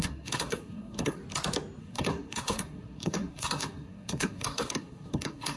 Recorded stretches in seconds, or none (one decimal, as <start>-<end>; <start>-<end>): 1.2-1.8